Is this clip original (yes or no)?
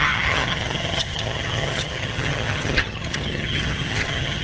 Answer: no